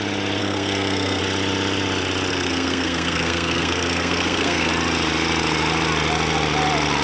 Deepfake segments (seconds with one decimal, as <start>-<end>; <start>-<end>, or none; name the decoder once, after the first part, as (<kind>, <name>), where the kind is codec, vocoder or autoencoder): 0.4-1.2 (codec, SNAC); 2.3-4.7